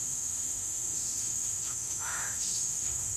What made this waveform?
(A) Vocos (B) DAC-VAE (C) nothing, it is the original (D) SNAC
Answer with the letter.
B